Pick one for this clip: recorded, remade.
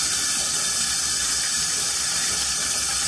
recorded